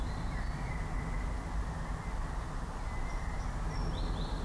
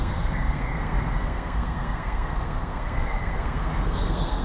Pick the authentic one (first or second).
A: first